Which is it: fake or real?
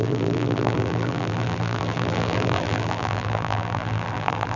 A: fake